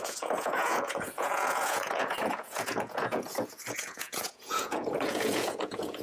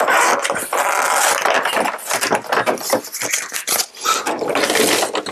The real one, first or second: second